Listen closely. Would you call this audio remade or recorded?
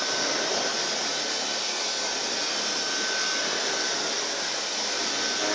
recorded